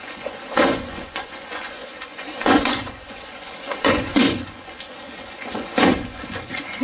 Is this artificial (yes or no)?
yes